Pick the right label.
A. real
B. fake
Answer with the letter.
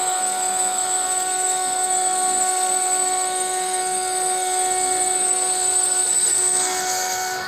B